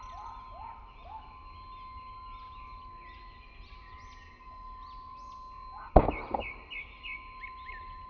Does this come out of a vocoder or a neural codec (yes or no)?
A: no